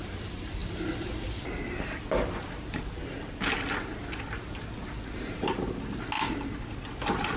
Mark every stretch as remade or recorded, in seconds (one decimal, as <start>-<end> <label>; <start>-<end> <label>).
0.0-7.4 recorded